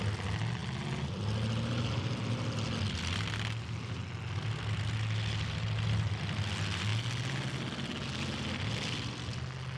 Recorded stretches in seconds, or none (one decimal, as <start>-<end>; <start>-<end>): 0.0-9.8